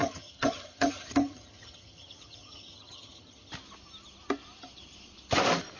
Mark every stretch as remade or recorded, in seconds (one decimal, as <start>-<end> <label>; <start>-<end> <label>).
0.0-3.5 remade; 3.5-5.8 recorded